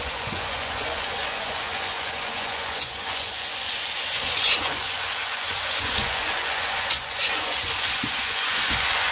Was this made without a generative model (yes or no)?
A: no